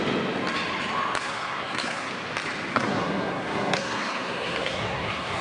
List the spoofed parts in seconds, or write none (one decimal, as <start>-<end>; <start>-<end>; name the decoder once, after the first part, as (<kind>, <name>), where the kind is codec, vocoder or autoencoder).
1.2-2.1 (codec, SNAC); 2.7-5.4